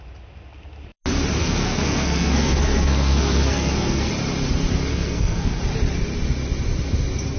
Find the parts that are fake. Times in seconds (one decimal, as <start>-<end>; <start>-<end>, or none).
1.4-4.1; 4.9-5.6